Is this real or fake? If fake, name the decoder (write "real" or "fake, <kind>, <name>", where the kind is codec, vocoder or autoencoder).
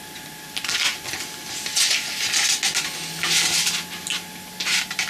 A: real